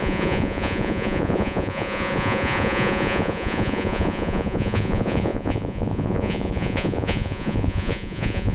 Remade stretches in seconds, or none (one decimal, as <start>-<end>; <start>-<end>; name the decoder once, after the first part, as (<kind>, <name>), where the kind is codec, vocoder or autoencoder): 0.0-8.5 (vocoder, Vocos)